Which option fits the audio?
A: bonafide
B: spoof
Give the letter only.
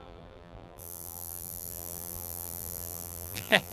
B